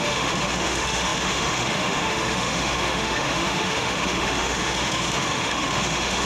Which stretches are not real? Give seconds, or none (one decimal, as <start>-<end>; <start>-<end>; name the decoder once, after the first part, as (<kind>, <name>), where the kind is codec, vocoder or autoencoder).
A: 0.0-6.3 (autoencoder, DAC-VAE)